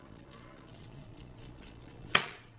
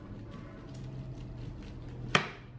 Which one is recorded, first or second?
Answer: second